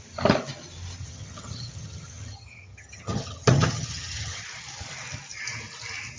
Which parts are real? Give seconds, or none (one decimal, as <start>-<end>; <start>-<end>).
0.0-1.0; 4.4-6.2